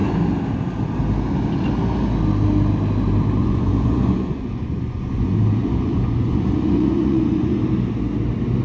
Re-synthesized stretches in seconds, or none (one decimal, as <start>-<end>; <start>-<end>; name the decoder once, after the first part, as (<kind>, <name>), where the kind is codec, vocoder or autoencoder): 3.4-7.6 (vocoder, Vocos)